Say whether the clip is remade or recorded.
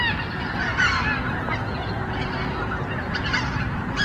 recorded